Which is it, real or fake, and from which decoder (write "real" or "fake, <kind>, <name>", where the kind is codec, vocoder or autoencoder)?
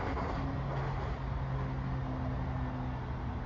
real